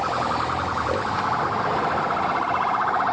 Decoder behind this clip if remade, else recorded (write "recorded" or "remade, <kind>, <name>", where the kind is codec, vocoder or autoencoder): recorded